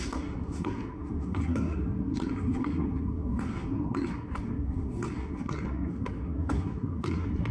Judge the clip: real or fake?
fake